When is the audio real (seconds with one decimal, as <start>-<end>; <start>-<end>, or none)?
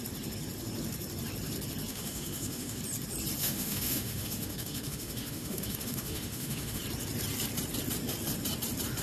0.0-1.9; 2.8-3.4; 6.8-9.0